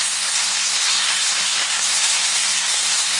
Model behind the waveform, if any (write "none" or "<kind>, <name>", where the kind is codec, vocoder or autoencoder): codec, SNAC